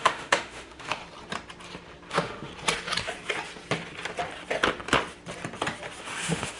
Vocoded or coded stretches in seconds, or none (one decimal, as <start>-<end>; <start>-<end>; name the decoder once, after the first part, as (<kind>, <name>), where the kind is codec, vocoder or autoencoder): 0.0-1.0 (autoencoder, DAC-VAE); 2.1-2.5; 6.0-6.6